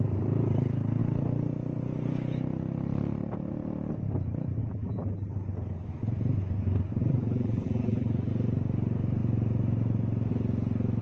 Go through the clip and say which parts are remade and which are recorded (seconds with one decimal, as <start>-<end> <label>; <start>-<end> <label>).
0.0-4.6 recorded; 4.6-5.3 remade; 5.3-7.0 recorded; 7.0-8.3 remade; 8.3-11.0 recorded